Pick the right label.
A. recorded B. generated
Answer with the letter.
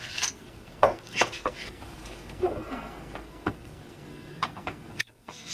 B